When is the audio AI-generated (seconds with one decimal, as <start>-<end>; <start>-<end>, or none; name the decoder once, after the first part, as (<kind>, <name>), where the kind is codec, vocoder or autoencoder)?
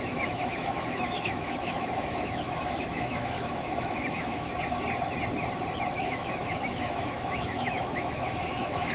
0.0-4.5 (autoencoder, DAC-VAE); 5.9-8.9